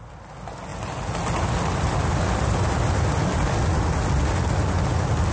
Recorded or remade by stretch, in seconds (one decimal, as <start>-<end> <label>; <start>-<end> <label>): 0.0-5.3 recorded